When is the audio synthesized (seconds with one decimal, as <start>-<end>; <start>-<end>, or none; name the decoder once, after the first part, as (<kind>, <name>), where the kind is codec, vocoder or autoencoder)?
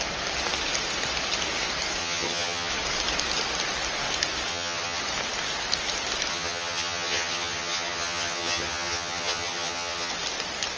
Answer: 2.0-2.7 (vocoder, HiFi-GAN); 4.5-5.0; 6.3-10.1